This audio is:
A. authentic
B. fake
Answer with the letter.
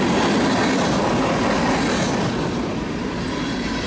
A